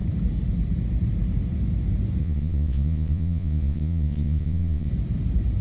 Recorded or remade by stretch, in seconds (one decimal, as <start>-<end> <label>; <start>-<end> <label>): 0.0-2.2 recorded; 2.2-4.9 remade; 4.9-5.6 recorded